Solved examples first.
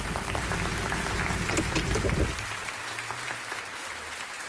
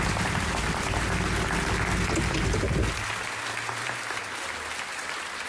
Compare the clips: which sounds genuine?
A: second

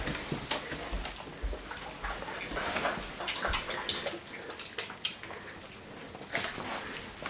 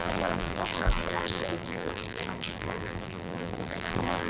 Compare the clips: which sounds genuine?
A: first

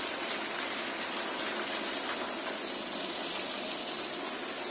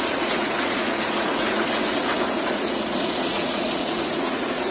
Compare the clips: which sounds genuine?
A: first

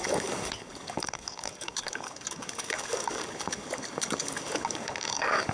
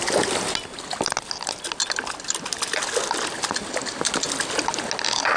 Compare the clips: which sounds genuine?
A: second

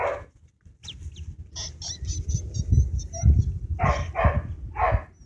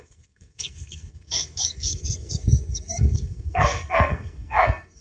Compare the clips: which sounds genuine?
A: first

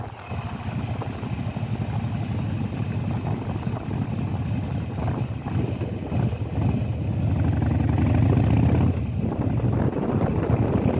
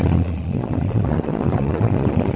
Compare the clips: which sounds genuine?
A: first